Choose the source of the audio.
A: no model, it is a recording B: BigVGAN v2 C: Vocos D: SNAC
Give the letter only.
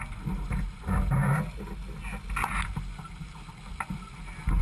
A